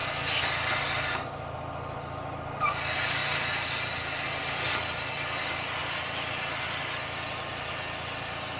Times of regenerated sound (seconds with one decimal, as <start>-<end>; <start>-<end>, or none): none